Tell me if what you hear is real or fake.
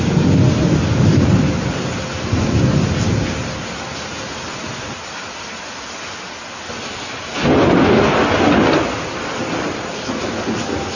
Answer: real